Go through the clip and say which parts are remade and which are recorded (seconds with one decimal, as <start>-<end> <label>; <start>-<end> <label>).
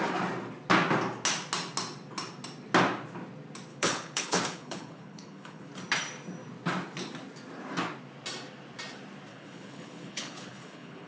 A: 0.0-3.7 recorded; 3.7-5.7 remade; 5.7-9.3 recorded; 9.3-11.1 remade